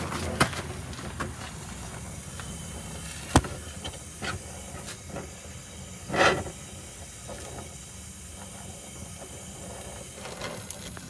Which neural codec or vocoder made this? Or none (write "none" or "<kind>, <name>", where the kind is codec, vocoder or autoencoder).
none